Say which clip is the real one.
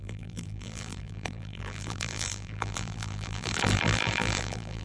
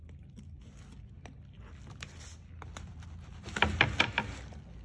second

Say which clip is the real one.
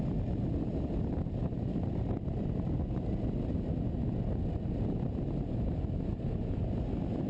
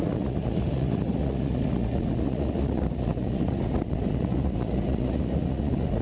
first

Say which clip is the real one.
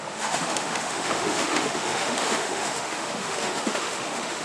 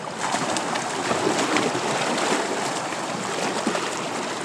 second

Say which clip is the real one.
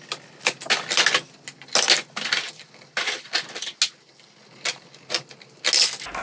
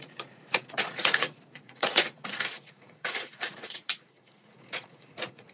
first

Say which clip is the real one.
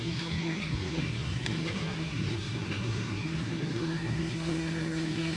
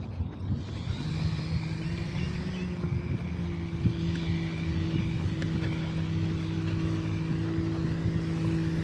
second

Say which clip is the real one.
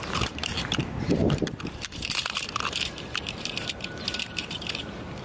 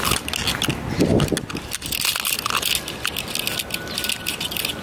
second